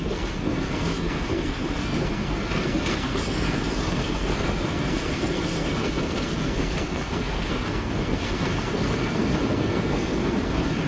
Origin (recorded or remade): remade